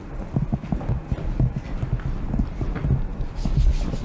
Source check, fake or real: real